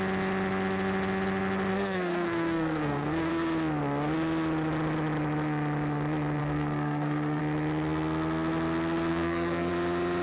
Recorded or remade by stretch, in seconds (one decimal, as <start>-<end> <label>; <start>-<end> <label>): 0.0-1.7 recorded; 1.7-3.3 remade; 3.3-6.4 recorded; 6.4-7.4 remade; 7.4-9.1 recorded; 9.1-9.7 remade; 9.7-10.2 recorded